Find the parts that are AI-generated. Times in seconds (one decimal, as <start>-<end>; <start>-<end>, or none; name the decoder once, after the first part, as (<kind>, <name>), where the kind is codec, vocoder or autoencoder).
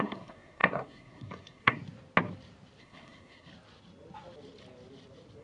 0.0-1.8 (codec, SNAC); 2.8-3.5